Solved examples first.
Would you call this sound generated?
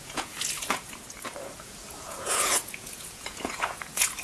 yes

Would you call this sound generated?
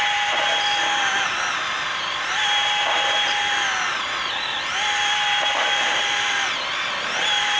no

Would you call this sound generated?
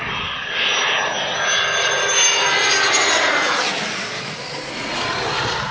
no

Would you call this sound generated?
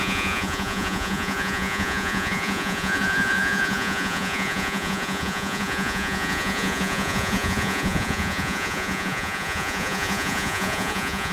yes